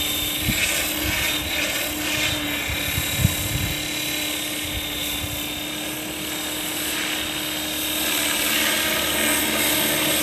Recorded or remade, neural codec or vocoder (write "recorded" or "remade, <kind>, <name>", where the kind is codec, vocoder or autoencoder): recorded